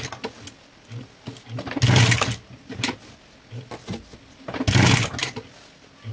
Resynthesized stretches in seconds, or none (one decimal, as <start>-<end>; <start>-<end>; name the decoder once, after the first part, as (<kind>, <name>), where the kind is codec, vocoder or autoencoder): none